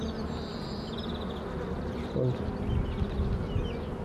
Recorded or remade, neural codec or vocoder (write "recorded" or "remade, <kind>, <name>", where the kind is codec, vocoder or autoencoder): recorded